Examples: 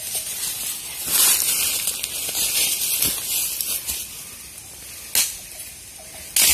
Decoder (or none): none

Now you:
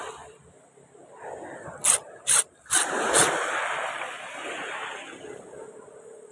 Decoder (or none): none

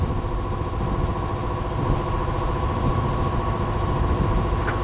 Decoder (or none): none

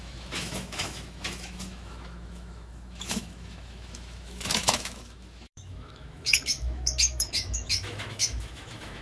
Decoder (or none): autoencoder, DAC-VAE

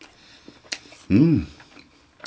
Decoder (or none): none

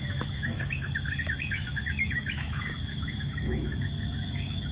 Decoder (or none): autoencoder, DAC-VAE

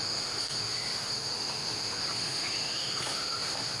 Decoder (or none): autoencoder, DAC-VAE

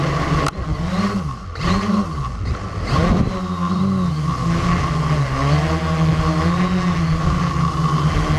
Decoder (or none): none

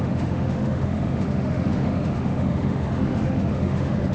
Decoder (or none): autoencoder, DAC-VAE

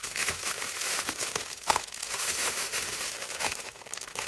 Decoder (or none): autoencoder, DAC-VAE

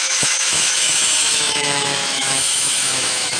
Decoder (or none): autoencoder, DAC-VAE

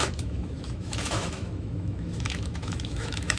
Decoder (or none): autoencoder, DAC-VAE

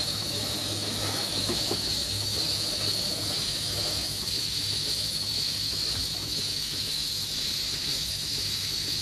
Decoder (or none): autoencoder, DAC-VAE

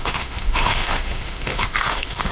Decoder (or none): autoencoder, DAC-VAE